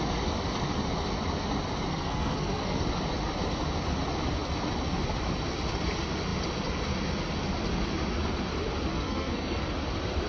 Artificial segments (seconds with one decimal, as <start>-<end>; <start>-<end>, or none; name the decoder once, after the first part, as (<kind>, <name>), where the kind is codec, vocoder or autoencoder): 1.9-2.8 (codec, SNAC); 8.9-9.6

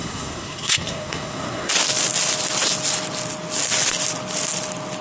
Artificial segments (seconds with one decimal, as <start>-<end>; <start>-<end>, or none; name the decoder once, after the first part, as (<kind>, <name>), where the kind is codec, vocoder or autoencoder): 0.0-1.7 (codec, SNAC)

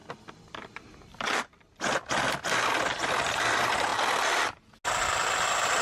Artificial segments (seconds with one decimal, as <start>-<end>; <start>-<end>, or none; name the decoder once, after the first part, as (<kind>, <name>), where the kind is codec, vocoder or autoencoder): none

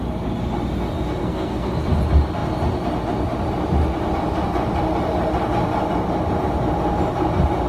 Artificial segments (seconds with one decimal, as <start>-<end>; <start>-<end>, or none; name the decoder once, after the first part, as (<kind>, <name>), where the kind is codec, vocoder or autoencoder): 1.2-1.7 (codec, SNAC)

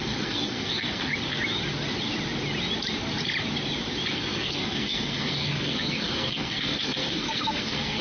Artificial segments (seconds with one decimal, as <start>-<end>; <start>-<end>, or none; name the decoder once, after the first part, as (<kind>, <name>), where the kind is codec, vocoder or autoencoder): 0.0-1.1 (codec, SNAC); 4.1-8.0